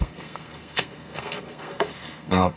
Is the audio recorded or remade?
remade